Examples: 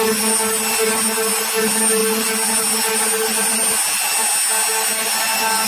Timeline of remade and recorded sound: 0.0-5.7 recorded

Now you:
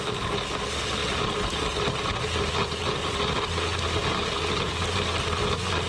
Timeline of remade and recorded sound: 0.0-5.9 recorded

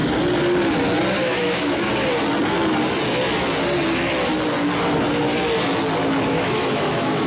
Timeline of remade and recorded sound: 0.0-1.2 recorded; 1.2-1.9 remade; 1.9-6.3 recorded; 6.3-7.3 remade

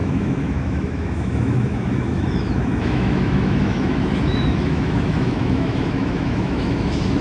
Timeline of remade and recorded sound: 0.0-7.2 remade

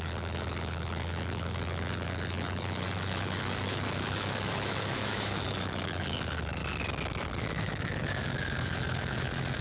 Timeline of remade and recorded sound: 0.0-6.6 remade; 6.6-7.4 recorded; 7.4-9.6 remade